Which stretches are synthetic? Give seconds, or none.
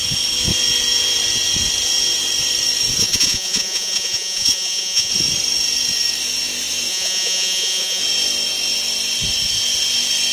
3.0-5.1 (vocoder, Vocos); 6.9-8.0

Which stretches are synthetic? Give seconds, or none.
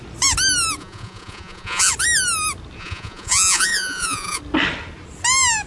0.8-1.9 (vocoder, Vocos); 2.8-4.4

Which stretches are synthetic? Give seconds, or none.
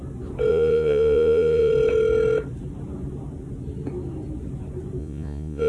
0.5-1.7 (vocoder, Vocos); 5.0-5.7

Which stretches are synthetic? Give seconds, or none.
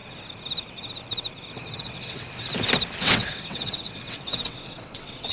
1.5-2.5 (vocoder, WaveNeXt); 3.0-5.3